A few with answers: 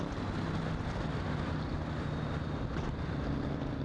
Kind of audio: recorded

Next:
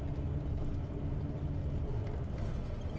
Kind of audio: recorded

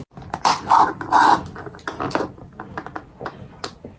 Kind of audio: recorded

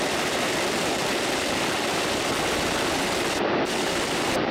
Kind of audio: remade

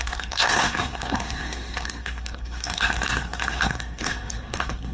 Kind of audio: remade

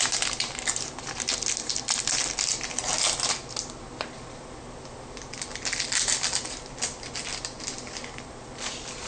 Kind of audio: recorded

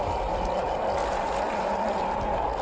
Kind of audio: recorded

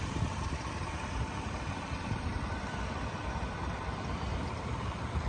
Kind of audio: remade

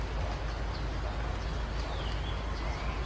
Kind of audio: recorded